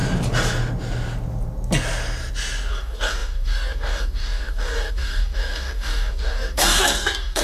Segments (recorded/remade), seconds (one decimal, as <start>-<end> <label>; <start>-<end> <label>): 0.0-2.7 recorded; 2.7-7.4 remade